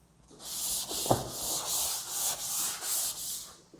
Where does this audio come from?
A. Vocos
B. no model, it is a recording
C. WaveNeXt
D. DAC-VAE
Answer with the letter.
B